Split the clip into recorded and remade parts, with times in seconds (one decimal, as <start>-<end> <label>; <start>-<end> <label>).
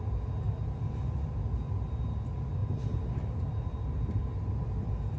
0.0-5.2 recorded